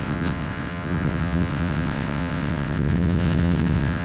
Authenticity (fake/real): fake